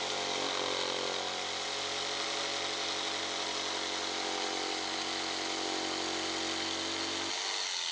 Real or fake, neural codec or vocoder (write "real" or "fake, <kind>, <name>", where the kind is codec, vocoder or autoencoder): real